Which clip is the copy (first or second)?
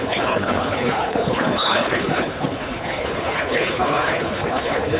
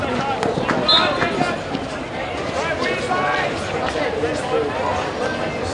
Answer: first